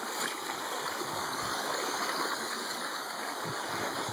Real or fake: fake